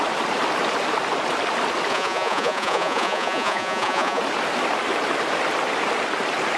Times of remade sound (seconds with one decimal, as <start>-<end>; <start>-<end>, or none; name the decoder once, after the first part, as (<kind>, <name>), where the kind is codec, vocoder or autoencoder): 1.9-4.2 (vocoder, Vocos)

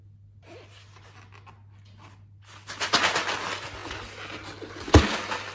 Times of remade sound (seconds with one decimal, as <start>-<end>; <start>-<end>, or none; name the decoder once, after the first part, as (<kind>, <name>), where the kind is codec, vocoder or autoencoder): none

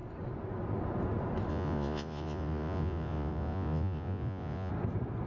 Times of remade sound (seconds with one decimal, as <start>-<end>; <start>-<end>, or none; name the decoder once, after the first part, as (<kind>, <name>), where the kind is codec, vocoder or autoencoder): 1.5-4.7 (vocoder, Vocos)

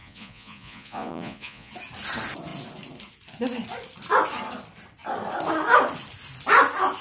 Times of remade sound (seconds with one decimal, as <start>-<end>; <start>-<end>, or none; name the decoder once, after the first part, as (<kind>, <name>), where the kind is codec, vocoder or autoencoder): 0.0-1.7 (vocoder, Vocos)

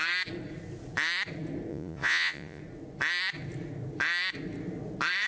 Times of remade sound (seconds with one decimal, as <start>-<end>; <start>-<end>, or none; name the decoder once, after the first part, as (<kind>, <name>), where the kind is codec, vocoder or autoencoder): 1.7-2.6 (vocoder, Vocos)

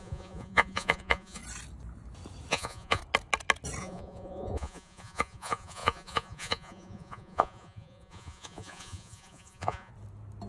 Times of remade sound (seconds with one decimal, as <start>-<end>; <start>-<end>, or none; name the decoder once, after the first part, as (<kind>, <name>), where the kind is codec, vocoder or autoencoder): 0.0-1.4 (vocoder, Vocos); 2.5-3.0; 3.8-9.9

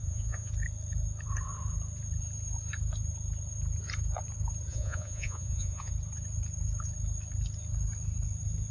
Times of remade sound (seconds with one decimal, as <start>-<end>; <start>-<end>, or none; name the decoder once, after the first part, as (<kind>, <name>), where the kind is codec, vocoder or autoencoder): 0.0-0.5 (vocoder, Vocos); 4.7-5.9